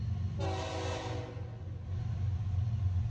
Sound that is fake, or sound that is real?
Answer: real